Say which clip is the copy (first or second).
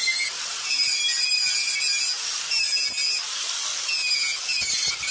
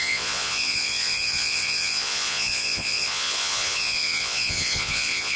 second